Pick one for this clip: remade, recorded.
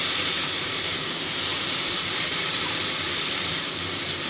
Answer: remade